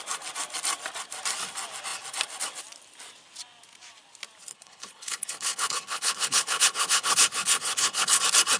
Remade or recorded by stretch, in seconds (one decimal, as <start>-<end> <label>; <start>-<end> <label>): 0.0-4.5 recorded; 4.5-8.2 remade; 8.2-8.6 recorded